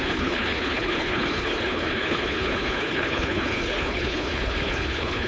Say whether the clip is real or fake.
fake